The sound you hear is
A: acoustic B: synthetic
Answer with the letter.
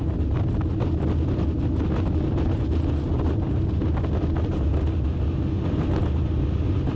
A